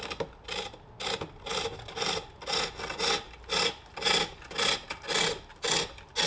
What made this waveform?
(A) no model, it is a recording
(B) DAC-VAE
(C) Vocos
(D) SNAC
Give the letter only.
A